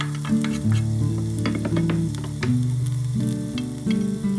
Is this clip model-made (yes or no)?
no